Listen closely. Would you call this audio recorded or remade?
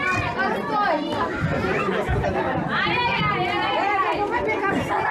recorded